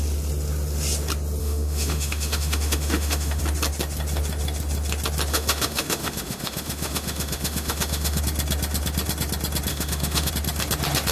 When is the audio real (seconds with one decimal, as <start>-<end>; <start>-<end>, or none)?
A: 0.0-1.4; 3.4-5.3; 8.2-9.7; 10.3-11.1